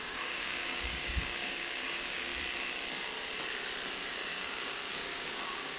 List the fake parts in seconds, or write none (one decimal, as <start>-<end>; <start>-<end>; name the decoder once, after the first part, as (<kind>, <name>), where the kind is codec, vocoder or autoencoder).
0.0-2.3 (codec, DAC); 4.1-5.8